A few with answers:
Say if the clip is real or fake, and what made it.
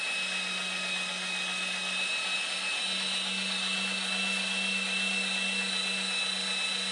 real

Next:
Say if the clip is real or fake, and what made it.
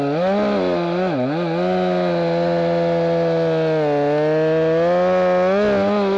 real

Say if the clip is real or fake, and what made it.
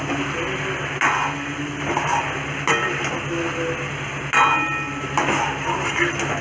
real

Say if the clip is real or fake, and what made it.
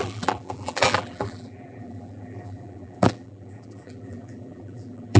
fake, vocoder, BigVGAN v2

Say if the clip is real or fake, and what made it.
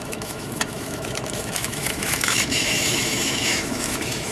fake, autoencoder, DAC-VAE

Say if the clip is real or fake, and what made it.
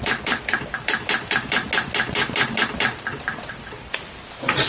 real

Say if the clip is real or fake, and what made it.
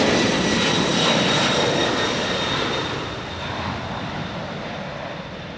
real